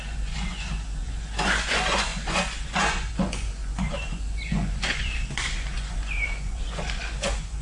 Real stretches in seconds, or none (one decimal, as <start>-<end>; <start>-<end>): none